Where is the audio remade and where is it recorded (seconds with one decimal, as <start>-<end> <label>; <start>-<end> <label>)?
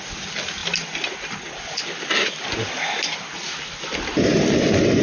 0.0-5.0 recorded